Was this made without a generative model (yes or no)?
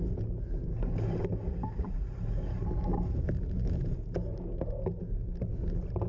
yes